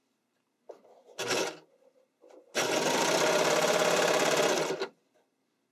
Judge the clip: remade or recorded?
recorded